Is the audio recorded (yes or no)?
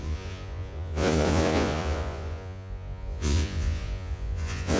no